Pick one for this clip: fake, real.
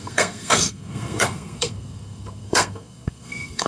fake